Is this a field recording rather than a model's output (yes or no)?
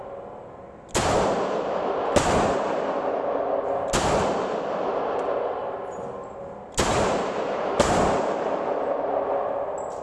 yes